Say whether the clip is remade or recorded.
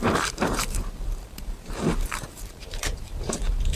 remade